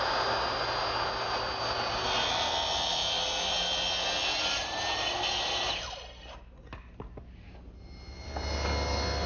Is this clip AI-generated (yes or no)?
no